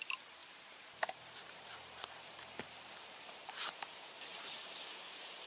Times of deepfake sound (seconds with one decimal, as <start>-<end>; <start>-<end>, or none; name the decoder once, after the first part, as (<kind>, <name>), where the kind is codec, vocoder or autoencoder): 0.4-3.7 (vocoder, BigVGAN v2); 4.3-5.5